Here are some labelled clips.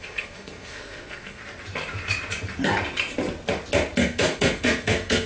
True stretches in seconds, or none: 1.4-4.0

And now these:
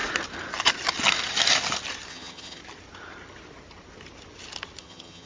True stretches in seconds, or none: 0.0-2.1; 2.6-4.8

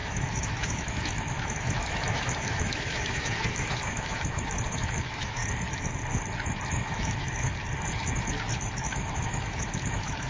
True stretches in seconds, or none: 5.4-6.8; 7.5-8.9